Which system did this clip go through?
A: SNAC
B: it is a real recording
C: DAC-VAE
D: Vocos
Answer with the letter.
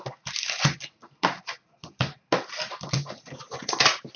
B